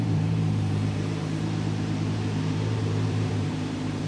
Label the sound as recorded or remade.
remade